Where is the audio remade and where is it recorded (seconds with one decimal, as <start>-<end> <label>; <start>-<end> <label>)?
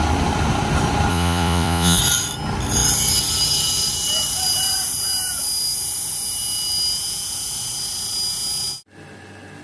0.0-1.1 recorded; 1.1-2.0 remade; 2.0-9.6 recorded